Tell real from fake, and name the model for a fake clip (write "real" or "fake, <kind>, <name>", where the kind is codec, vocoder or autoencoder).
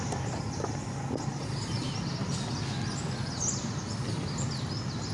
real